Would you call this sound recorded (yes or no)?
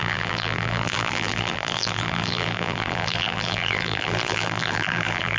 no